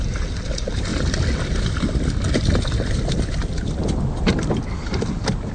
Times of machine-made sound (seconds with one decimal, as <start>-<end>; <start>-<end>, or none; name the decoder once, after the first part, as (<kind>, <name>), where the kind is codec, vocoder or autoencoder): none